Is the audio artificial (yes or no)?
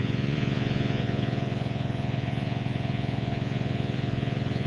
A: yes